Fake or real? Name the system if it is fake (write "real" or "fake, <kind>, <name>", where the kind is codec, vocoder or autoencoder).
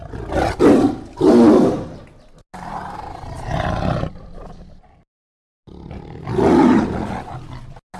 real